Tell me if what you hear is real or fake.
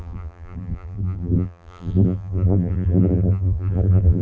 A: fake